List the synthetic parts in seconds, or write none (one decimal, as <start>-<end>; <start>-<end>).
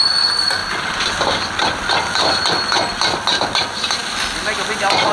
none